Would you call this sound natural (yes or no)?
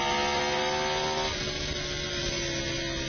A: yes